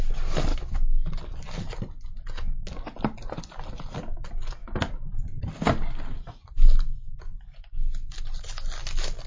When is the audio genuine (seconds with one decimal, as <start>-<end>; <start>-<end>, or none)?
0.0-0.5; 1.2-9.3